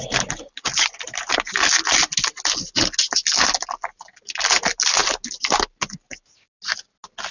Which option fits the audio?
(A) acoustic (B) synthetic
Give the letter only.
A